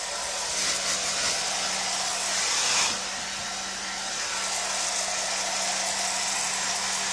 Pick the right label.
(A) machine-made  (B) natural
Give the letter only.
B